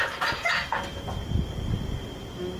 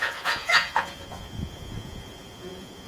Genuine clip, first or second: first